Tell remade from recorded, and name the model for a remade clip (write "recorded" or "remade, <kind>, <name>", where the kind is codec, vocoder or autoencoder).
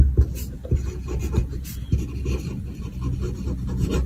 recorded